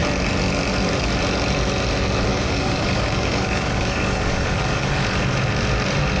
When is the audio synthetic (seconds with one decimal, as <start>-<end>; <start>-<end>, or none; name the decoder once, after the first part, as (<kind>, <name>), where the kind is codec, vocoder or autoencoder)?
2.3-5.2 (codec, DAC)